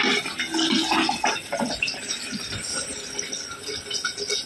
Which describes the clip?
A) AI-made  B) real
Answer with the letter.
A